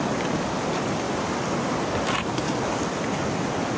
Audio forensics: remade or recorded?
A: recorded